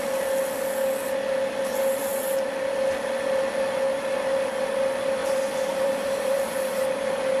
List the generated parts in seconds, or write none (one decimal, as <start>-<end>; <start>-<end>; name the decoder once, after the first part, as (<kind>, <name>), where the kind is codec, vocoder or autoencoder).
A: 5.2-7.4 (vocoder, BigVGAN v2)